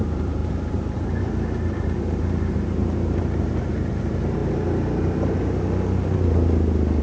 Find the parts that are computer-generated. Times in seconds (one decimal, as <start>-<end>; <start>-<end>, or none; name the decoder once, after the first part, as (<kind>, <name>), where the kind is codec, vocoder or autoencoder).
0.0-4.4 (vocoder, BigVGAN v2)